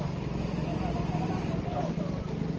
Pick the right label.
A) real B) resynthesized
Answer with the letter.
A